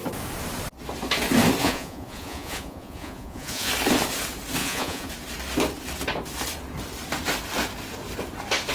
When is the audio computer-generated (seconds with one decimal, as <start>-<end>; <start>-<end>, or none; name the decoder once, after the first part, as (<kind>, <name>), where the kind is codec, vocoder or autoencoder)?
1.6-3.7 (vocoder, Vocos); 4.6-5.1